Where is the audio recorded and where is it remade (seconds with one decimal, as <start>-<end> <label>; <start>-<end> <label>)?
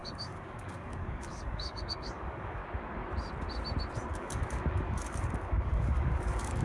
0.0-2.6 remade; 2.6-4.1 recorded; 4.1-6.6 remade